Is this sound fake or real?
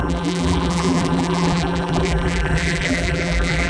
fake